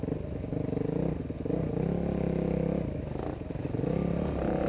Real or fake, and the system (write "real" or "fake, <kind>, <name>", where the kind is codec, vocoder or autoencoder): real